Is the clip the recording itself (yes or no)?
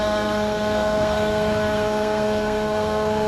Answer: no